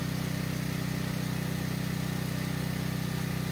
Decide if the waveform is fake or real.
real